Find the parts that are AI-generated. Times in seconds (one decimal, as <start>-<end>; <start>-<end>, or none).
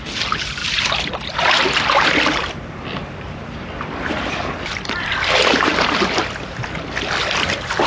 0.0-5.7; 7.2-7.9